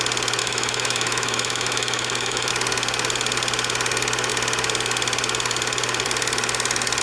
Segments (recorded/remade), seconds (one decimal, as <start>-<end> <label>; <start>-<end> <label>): 0.0-0.4 recorded; 0.4-2.5 remade; 2.5-7.0 recorded